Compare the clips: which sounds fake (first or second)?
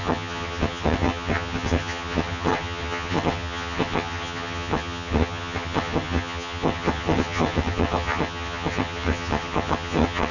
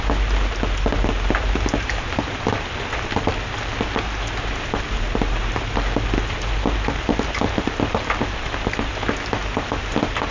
first